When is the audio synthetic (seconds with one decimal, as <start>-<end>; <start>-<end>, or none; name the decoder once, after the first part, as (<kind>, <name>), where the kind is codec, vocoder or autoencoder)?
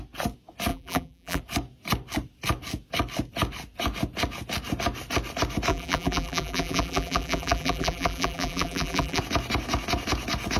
0.7-1.4 (vocoder, BigVGAN v2); 5.7-9.2